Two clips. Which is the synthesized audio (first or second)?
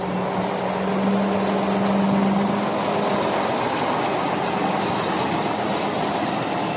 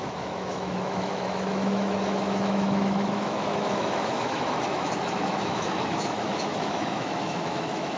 second